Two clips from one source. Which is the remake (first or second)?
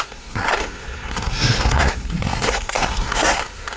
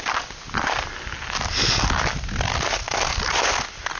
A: first